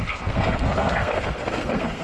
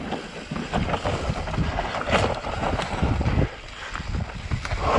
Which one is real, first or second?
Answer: second